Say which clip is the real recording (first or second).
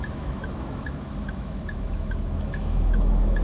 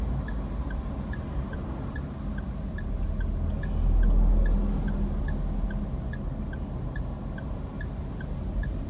second